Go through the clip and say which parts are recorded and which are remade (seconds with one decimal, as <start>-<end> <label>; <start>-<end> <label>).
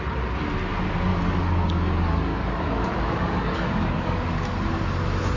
0.0-1.1 recorded; 1.1-4.3 remade; 4.3-5.4 recorded